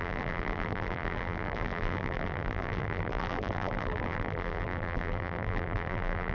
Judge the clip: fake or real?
fake